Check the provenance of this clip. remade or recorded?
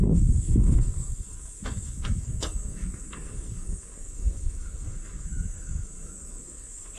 remade